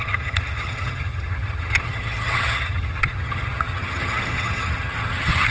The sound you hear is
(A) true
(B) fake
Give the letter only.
B